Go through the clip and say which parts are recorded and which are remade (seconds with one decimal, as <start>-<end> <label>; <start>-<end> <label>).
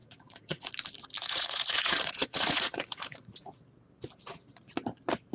0.0-0.7 remade; 0.7-1.2 recorded; 1.2-3.6 remade; 3.6-5.3 recorded